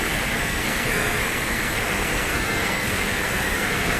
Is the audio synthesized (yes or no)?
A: yes